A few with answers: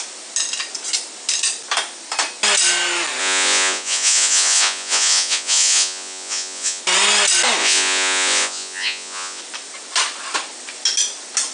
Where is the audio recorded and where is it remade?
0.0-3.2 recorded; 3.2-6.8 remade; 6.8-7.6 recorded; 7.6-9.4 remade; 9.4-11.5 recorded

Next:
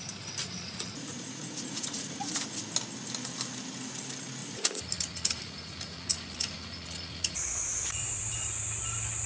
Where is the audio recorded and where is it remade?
0.0-0.4 recorded; 0.4-2.4 remade; 2.4-4.4 recorded; 4.4-8.3 remade; 8.3-9.3 recorded

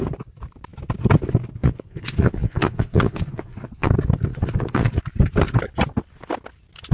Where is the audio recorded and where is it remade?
0.0-1.6 recorded; 1.6-3.9 remade; 3.9-4.3 recorded; 4.3-5.0 remade; 5.0-6.9 recorded

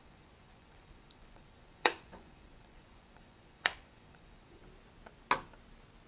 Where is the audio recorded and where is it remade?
0.0-4.6 remade; 4.6-6.1 recorded